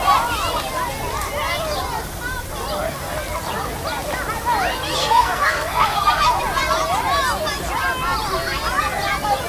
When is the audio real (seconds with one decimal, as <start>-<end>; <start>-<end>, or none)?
0.0-5.0; 6.4-9.5